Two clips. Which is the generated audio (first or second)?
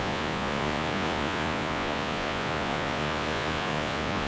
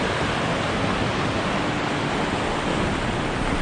first